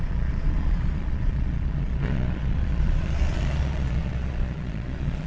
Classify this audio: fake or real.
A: fake